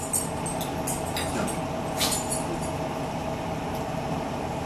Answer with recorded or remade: recorded